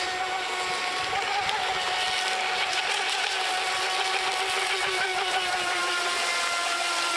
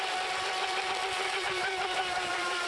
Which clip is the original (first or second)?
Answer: first